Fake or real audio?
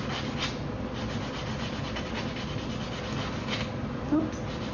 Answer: real